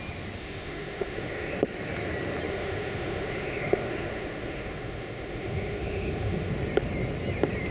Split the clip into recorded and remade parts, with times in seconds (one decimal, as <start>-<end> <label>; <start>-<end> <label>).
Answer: 0.0-0.4 recorded; 0.4-1.5 remade; 1.5-2.5 recorded; 2.5-6.5 remade; 6.5-7.7 recorded